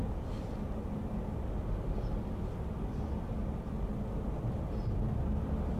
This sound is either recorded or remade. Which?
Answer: recorded